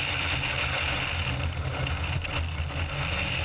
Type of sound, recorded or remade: recorded